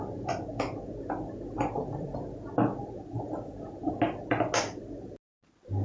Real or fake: real